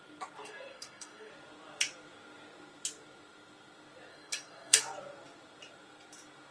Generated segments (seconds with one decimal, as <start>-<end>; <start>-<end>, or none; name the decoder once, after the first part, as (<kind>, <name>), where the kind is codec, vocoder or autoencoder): 0.4-1.3 (codec, SNAC); 4.1-4.8